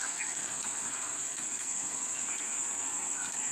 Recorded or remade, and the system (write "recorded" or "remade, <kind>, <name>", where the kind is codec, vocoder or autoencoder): remade, codec, SNAC